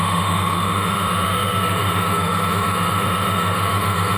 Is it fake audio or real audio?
fake